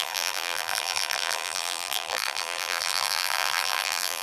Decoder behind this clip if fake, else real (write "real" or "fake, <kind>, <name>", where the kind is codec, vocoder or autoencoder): fake, vocoder, BigVGAN v2